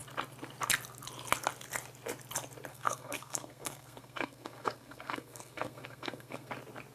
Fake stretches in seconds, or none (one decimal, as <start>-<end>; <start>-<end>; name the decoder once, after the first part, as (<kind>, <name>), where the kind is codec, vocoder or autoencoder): 2.7-6.5 (codec, SNAC)